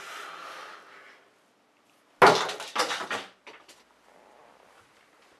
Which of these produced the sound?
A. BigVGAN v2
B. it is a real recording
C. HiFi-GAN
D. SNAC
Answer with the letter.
B